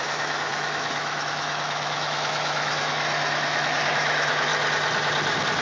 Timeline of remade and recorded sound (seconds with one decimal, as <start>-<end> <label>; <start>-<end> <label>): 0.0-4.5 remade; 4.5-5.6 recorded